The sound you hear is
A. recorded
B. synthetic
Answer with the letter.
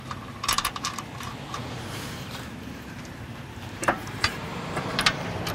B